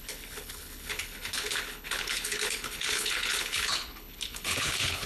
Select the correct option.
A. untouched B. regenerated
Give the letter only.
B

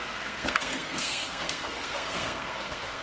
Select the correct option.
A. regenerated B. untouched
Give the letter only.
A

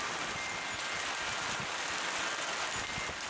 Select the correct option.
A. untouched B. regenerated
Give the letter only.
A